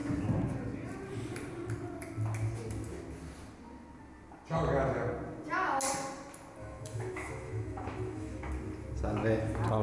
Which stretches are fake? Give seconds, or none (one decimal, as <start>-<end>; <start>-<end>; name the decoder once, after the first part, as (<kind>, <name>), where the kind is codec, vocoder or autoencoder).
6.6-8.5 (autoencoder, DAC-VAE)